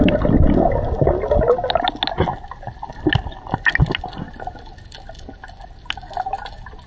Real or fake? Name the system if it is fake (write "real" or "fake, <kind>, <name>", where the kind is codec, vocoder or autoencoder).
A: real